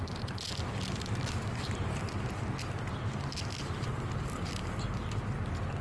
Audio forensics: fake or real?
real